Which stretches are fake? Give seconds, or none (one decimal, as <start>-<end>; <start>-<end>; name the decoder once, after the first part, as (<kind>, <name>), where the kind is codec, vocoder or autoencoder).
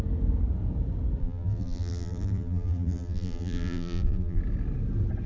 1.2-4.4 (vocoder, BigVGAN v2)